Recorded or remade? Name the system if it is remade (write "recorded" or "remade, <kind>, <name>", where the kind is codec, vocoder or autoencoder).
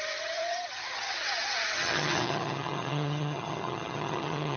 remade, vocoder, HiFi-GAN